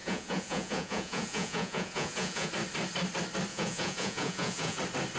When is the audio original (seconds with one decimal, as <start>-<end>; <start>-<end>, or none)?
2.5-3.5; 4.8-5.2